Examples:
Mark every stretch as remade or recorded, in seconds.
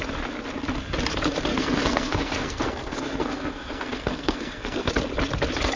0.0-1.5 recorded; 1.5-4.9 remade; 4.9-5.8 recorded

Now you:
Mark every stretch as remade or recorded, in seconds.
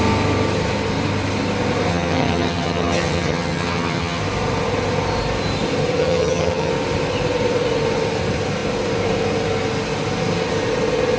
0.0-1.9 recorded; 1.9-4.2 remade; 4.2-6.0 recorded; 6.0-6.7 remade; 6.7-11.2 recorded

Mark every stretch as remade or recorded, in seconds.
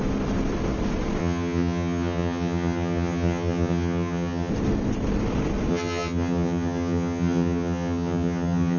0.0-1.2 recorded; 1.2-4.5 remade; 4.5-5.7 recorded; 5.7-8.8 remade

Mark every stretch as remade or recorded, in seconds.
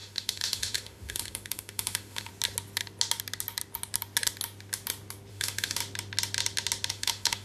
0.0-2.3 remade; 2.3-5.3 recorded; 5.3-5.8 remade; 5.8-6.9 recorded; 6.9-7.4 remade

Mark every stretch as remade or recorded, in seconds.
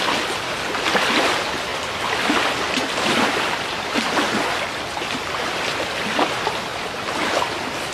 0.0-7.9 recorded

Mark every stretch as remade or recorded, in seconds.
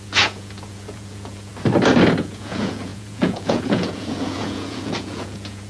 0.0-1.5 remade; 1.5-2.2 recorded; 2.2-5.7 remade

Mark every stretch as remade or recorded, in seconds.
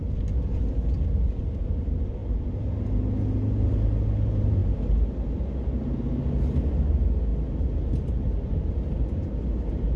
0.0-10.0 recorded